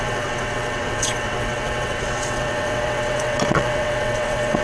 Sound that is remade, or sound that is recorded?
remade